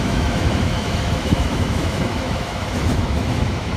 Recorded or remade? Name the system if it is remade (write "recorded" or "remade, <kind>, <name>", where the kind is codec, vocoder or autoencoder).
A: remade, autoencoder, DAC-VAE